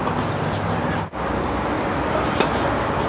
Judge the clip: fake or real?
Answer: real